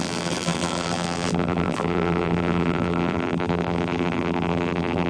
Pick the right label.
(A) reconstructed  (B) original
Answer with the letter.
A